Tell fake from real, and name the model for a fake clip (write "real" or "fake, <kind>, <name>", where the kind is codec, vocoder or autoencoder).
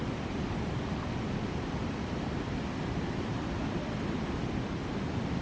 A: fake, vocoder, BigVGAN v2